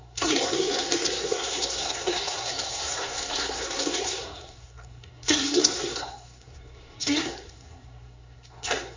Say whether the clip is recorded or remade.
remade